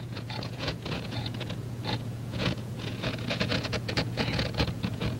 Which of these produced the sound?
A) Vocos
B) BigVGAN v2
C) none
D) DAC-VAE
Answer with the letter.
A